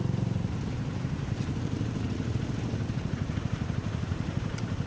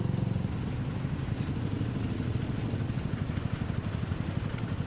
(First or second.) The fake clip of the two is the first